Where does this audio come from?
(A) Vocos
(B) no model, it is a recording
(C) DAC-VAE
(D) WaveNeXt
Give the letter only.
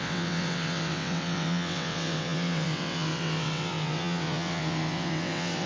D